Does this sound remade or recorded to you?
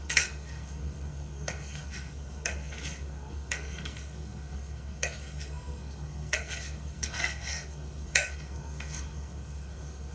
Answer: remade